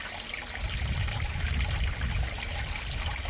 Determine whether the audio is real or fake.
real